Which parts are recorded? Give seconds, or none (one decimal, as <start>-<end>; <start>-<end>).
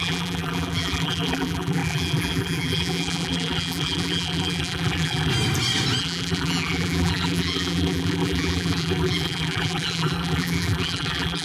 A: 5.3-6.0